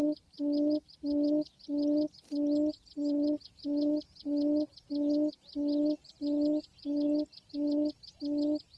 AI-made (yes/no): no